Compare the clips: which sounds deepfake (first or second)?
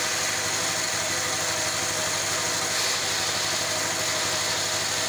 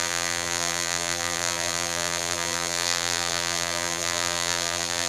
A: second